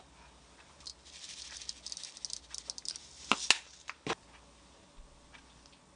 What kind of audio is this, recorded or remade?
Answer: recorded